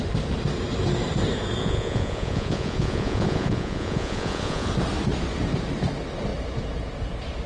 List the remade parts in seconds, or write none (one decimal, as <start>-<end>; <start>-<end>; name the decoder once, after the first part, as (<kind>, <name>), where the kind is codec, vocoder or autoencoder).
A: 1.6-4.7 (vocoder, Vocos)